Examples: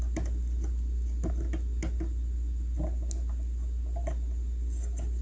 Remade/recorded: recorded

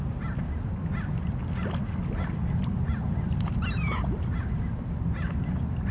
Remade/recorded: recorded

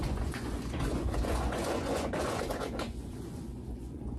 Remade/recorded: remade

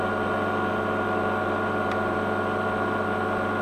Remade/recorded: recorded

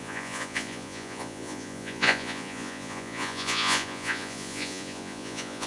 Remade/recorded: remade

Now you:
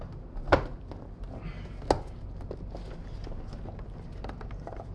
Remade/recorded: recorded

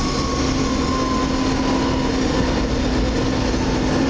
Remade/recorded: recorded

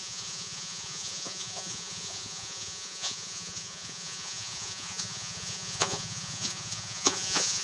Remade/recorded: remade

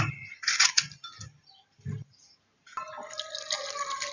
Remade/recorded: recorded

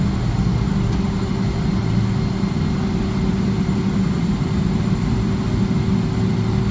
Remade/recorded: recorded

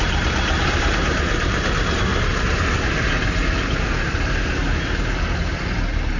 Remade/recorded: recorded